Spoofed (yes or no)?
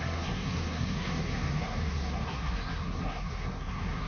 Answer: yes